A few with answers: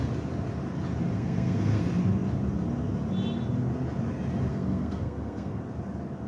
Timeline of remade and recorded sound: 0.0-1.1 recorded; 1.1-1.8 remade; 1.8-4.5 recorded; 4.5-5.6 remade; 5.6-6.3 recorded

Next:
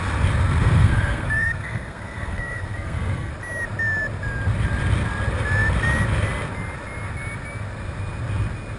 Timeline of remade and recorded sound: 0.0-0.6 recorded; 0.6-3.3 remade; 3.3-8.8 recorded

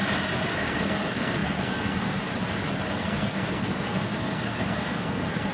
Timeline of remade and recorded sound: 0.0-0.5 recorded; 0.5-2.3 remade; 2.3-2.9 recorded; 2.9-5.5 remade